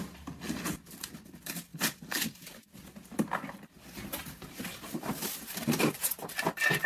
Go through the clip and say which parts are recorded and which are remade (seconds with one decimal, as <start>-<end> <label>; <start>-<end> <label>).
0.0-6.9 recorded